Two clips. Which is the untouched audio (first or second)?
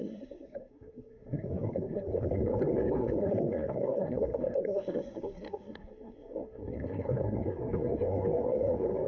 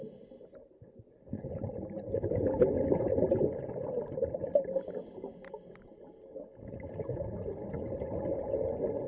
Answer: second